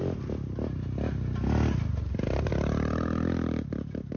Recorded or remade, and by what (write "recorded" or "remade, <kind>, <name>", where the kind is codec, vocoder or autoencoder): recorded